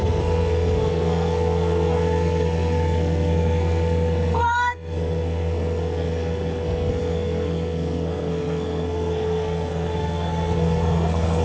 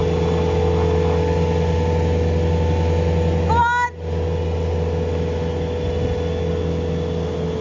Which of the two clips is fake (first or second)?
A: first